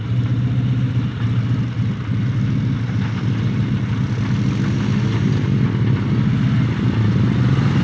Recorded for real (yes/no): yes